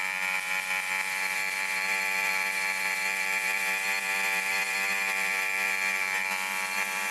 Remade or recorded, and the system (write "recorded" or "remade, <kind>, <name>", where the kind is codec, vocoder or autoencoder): remade, vocoder, BigVGAN v2